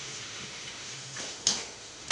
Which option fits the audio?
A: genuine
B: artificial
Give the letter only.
B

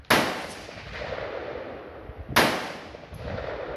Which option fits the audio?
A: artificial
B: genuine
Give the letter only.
B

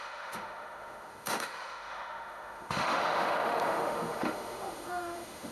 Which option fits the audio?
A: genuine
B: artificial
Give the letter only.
B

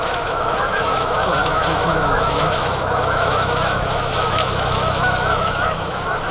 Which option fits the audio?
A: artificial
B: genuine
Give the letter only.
A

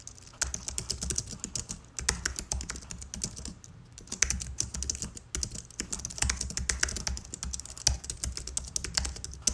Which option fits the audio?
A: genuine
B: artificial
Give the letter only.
A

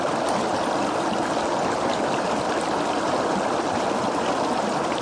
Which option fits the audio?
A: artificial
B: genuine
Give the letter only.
B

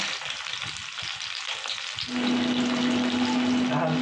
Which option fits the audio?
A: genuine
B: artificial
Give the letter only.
A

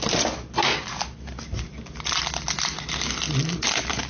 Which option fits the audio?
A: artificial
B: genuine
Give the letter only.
B